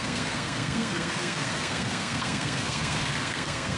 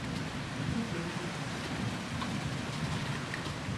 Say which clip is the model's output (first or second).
first